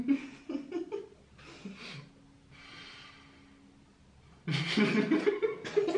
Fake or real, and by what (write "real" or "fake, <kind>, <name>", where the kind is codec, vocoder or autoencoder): real